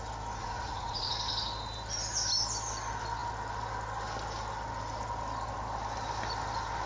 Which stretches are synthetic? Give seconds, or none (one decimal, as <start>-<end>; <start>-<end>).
0.4-1.1